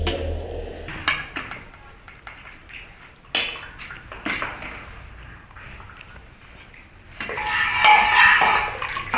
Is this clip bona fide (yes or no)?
yes